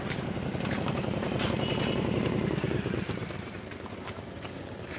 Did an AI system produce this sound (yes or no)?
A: yes